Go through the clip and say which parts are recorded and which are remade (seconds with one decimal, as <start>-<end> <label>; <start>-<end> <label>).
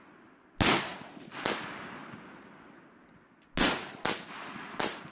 0.0-5.1 recorded